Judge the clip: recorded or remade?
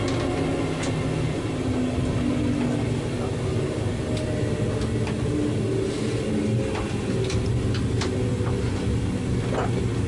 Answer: recorded